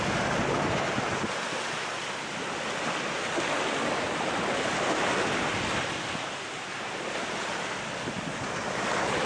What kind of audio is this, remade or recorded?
recorded